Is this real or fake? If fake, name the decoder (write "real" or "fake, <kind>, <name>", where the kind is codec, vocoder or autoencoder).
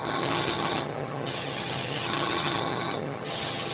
fake, vocoder, HiFi-GAN